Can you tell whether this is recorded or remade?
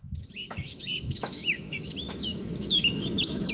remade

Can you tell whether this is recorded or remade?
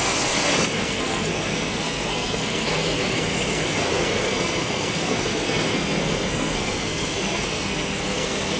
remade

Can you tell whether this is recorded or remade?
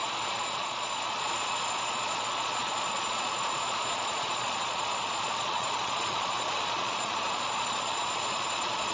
remade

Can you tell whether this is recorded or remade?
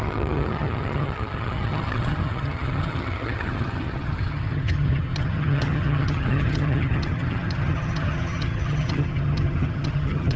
remade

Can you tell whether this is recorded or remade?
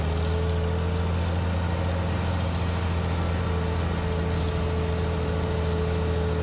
recorded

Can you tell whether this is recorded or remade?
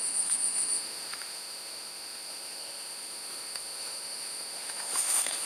remade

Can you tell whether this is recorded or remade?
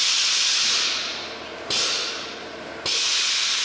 recorded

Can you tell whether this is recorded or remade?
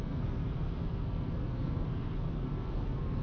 remade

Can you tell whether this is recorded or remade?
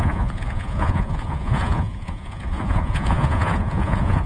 remade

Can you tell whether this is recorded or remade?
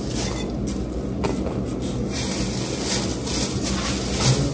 recorded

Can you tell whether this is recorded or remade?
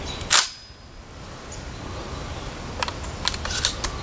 recorded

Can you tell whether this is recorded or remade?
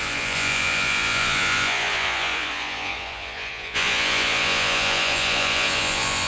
remade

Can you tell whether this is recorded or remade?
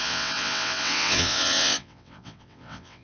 remade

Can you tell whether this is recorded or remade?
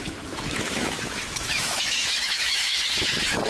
remade